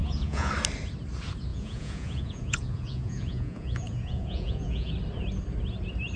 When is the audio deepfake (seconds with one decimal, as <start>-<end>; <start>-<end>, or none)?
0.0-0.5; 1.5-4.9